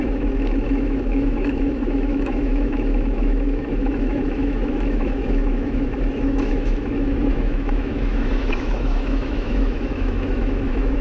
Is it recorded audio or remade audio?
remade